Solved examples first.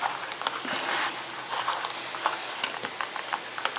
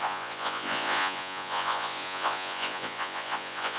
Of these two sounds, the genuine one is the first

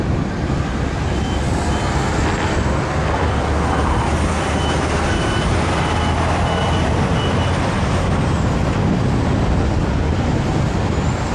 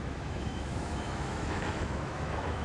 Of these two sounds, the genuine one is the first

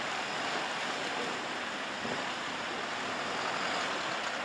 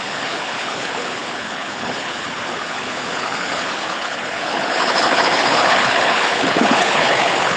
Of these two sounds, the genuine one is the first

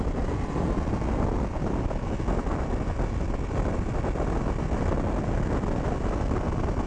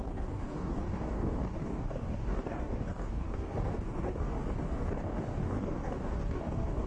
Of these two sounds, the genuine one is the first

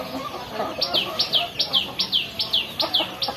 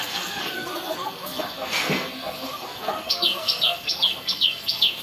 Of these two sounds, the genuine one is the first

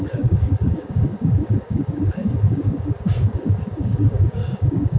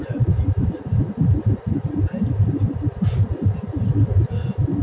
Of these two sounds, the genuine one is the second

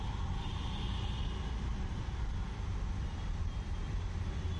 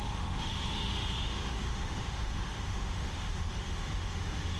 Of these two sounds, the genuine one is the first